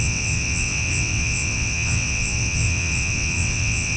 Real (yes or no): no